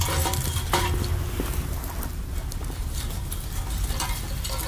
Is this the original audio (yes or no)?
yes